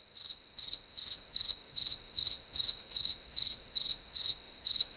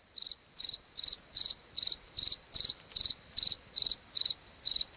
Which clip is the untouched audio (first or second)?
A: second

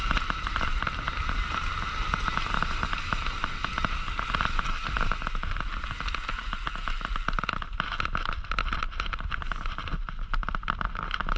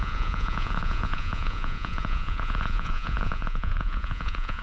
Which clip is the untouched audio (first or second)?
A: first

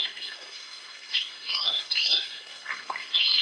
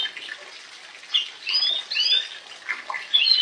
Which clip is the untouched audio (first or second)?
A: second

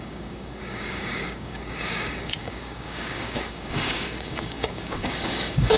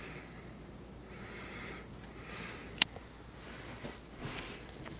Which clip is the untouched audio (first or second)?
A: second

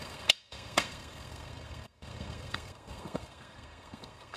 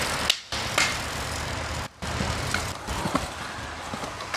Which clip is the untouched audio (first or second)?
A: second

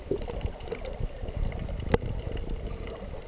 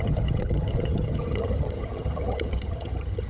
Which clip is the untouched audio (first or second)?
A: first